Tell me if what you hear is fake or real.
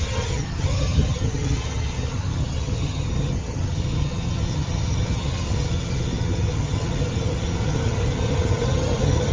fake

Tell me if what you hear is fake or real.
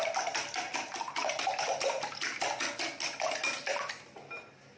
real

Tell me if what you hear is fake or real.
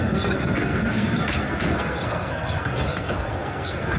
fake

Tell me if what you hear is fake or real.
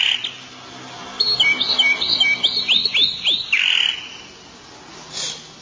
real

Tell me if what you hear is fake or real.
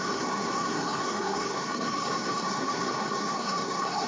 fake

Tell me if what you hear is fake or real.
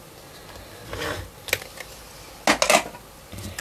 real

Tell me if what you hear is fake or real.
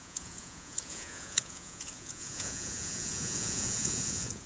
fake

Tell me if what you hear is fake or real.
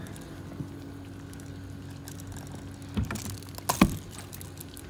real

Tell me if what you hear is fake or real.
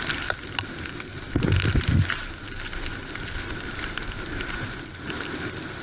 real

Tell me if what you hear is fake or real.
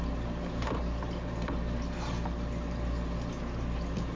real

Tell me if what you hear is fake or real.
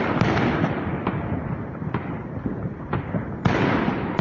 fake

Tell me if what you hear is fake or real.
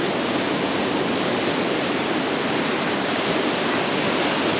real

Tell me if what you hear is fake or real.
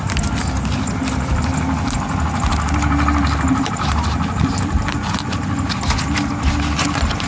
real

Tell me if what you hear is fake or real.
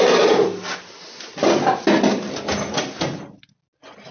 real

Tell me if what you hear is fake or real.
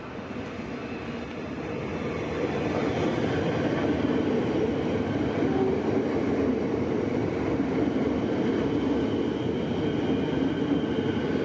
real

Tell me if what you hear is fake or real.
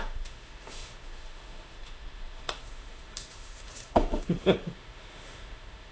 fake